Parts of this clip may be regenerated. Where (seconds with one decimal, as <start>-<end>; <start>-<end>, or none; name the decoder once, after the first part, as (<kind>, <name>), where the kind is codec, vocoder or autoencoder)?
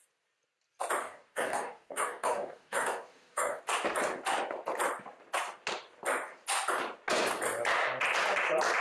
1.0-3.6 (codec, DAC)